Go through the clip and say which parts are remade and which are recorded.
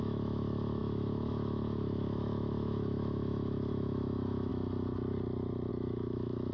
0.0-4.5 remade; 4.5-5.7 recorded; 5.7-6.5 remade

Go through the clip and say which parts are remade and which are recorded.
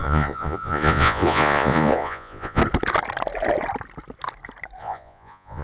0.0-2.6 remade; 2.6-4.8 recorded; 4.8-5.6 remade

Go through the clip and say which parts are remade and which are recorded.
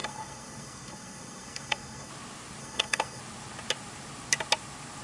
0.0-2.1 remade; 2.1-2.6 recorded; 2.6-3.2 remade; 3.2-5.0 recorded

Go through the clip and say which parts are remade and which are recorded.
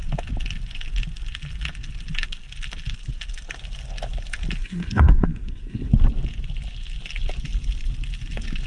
0.0-4.6 recorded; 4.6-5.9 remade; 5.9-8.7 recorded